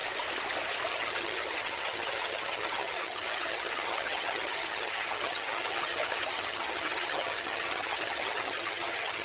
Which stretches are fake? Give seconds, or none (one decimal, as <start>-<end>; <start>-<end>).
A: 0.9-9.2